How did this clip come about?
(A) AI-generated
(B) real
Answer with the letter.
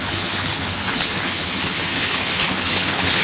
A